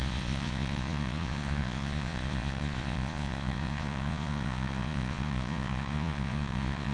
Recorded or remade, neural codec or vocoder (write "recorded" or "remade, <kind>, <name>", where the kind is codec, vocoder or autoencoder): remade, vocoder, Vocos